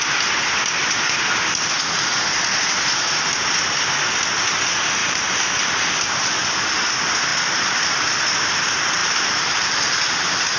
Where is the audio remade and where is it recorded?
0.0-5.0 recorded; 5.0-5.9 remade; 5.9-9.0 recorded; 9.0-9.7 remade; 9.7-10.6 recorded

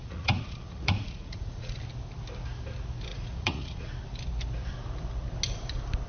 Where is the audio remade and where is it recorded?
0.0-1.8 remade; 1.8-3.1 recorded; 3.1-3.9 remade; 3.9-6.1 recorded

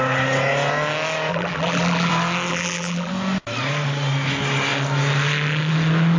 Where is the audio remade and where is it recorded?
0.0-1.3 recorded; 1.3-2.1 remade; 2.1-2.5 recorded; 2.5-3.1 remade; 3.1-6.2 recorded